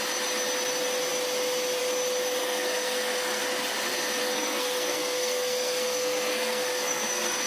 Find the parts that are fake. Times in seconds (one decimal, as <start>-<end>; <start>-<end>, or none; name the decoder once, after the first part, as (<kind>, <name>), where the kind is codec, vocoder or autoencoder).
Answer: 2.4-3.4 (codec, SNAC); 4.2-7.5